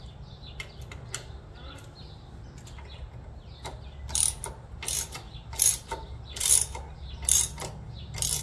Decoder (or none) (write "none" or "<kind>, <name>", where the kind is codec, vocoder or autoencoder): none